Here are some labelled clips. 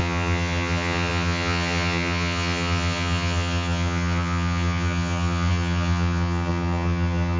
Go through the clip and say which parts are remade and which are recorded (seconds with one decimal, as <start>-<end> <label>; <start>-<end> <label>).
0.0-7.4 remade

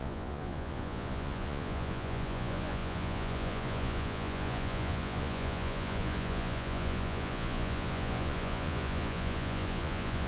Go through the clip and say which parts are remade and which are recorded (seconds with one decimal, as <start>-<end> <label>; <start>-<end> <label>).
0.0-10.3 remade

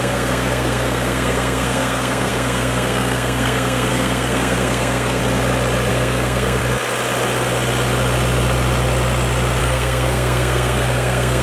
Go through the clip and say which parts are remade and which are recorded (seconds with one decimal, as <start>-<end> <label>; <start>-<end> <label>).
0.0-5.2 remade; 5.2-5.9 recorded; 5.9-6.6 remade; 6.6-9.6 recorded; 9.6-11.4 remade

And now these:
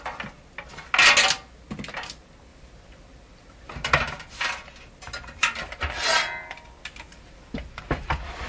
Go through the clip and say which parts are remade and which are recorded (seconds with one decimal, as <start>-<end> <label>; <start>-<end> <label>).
0.0-2.5 recorded; 2.5-4.0 remade; 4.0-7.1 recorded; 7.1-8.1 remade; 8.1-8.5 recorded

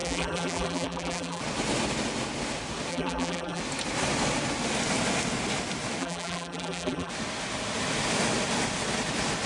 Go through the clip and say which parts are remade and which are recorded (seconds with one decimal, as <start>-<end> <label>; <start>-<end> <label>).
0.0-1.4 remade; 1.4-2.9 recorded; 2.9-3.6 remade; 3.6-6.0 recorded; 6.0-7.1 remade; 7.1-9.5 recorded